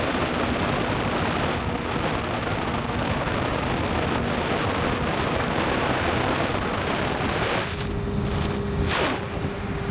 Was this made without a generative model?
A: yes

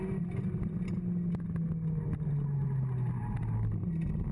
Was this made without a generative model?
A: yes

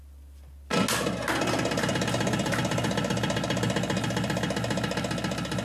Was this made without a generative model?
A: yes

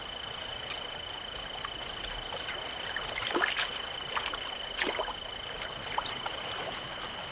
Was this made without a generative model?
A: yes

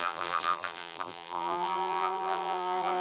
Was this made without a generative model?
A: no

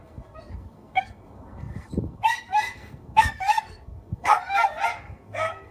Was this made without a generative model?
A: no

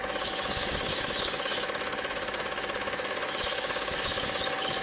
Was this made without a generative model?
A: no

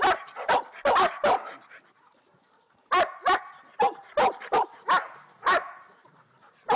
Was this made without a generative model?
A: yes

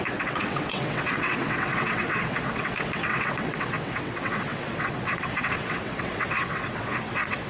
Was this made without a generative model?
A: no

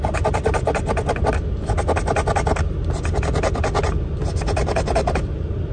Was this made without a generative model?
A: yes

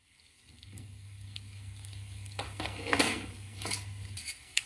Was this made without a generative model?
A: no